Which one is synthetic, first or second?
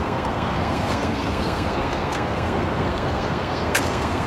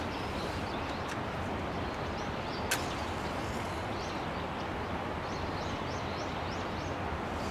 first